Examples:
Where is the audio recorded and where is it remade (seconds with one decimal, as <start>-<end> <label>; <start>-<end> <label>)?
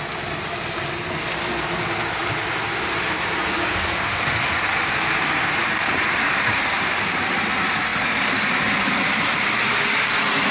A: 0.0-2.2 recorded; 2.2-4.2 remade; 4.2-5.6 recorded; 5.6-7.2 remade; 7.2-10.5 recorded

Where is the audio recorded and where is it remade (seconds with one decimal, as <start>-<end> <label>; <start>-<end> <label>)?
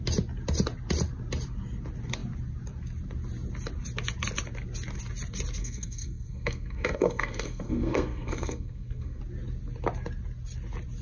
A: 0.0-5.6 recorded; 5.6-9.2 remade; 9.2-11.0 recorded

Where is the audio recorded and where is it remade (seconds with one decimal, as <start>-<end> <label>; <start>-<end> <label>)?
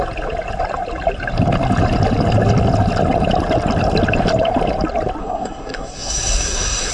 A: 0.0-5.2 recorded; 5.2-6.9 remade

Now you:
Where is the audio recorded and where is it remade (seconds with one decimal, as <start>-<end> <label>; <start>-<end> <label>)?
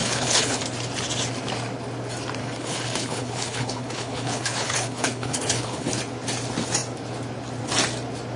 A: 0.0-0.6 remade; 0.6-2.4 recorded; 2.4-6.0 remade; 6.0-8.4 recorded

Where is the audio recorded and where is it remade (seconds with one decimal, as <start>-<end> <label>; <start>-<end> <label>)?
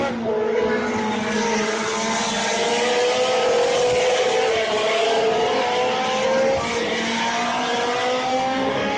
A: 0.0-8.3 recorded; 8.3-9.0 remade